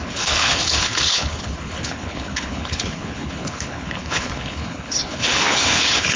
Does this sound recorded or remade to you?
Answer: remade